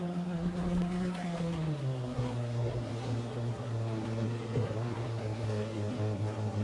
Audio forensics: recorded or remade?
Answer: remade